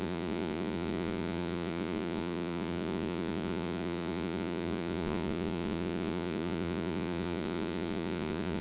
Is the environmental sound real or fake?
fake